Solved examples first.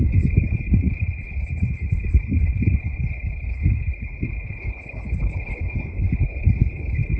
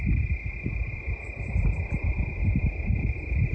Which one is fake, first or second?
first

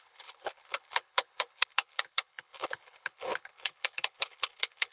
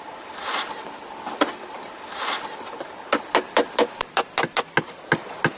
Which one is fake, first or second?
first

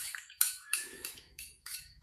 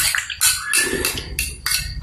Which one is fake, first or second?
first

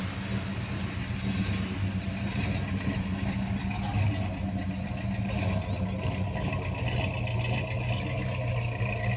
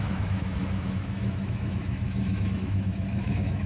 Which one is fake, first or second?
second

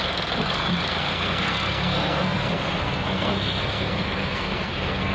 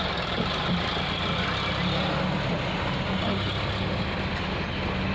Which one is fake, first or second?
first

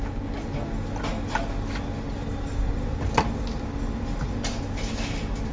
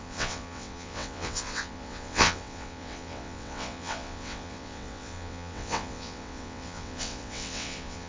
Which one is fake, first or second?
second